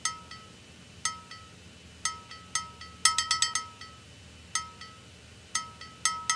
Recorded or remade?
recorded